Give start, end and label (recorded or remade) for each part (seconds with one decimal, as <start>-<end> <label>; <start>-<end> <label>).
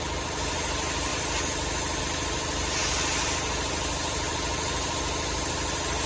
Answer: 0.0-6.1 recorded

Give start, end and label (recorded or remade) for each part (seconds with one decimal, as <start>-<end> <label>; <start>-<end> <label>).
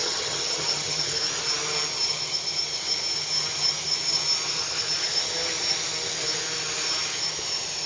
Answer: 0.0-1.1 remade; 1.1-7.9 recorded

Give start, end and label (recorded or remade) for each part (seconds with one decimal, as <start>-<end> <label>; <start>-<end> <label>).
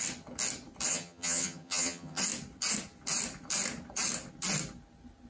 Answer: 0.0-0.9 recorded; 0.9-2.2 remade; 2.2-5.3 recorded